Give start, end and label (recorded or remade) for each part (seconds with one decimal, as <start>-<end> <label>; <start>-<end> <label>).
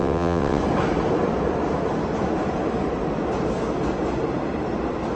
0.0-0.6 remade; 0.6-5.2 recorded